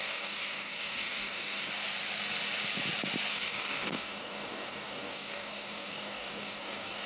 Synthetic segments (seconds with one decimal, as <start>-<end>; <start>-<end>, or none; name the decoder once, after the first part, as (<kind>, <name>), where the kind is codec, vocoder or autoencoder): 0.0-1.7 (codec, DAC); 3.3-7.1